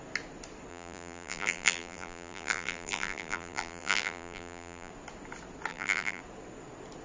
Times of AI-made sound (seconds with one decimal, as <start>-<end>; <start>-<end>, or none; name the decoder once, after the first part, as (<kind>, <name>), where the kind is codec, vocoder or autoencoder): 0.7-4.9 (vocoder, BigVGAN v2); 5.7-6.2